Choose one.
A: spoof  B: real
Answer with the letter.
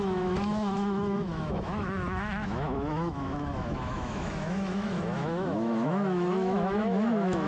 A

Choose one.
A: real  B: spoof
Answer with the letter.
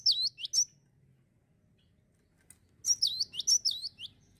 A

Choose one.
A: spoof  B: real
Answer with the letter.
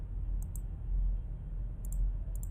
B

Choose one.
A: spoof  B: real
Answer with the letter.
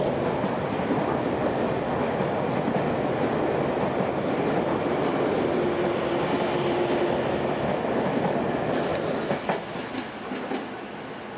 B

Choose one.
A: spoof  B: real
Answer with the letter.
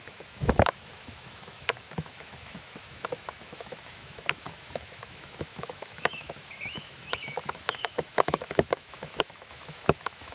A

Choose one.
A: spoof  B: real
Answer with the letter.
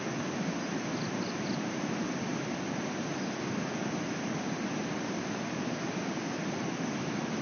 B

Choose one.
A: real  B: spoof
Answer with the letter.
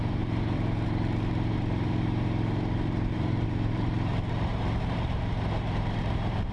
B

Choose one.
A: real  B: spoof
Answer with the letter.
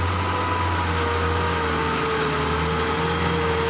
A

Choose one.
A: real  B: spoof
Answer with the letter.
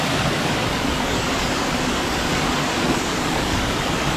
B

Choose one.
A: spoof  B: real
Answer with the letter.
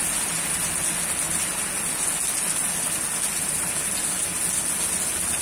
B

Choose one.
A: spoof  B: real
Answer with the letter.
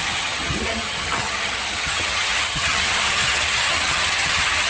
A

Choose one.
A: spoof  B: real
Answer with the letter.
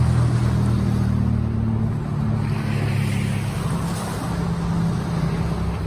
B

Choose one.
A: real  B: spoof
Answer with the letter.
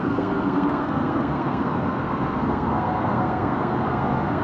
B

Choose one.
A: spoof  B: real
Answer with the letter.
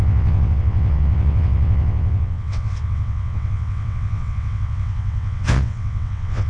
A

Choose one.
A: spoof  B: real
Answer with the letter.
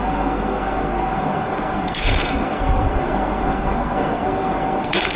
A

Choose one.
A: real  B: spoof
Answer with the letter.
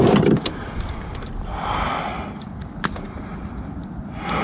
A